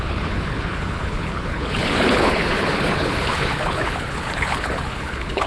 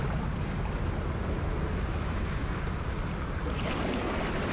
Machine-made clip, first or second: first